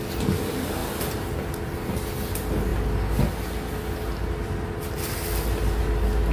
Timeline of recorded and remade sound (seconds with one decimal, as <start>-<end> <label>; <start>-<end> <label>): 0.0-6.3 recorded

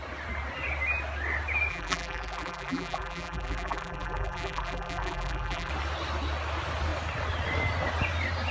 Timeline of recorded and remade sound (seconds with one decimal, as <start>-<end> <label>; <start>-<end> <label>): 0.0-1.7 recorded; 1.7-5.7 remade; 5.7-8.5 recorded